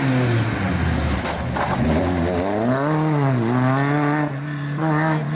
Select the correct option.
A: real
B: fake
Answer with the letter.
A